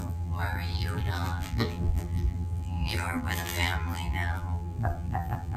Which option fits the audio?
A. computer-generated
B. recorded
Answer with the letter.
A